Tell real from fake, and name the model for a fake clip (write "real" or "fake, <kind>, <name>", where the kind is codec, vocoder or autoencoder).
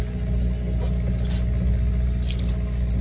real